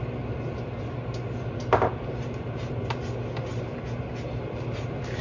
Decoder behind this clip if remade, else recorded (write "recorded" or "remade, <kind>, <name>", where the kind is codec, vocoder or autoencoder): recorded